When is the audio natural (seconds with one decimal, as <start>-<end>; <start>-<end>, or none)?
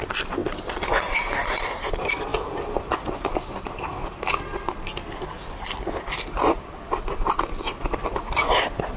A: 0.0-9.0